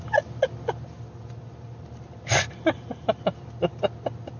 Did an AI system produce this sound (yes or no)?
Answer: no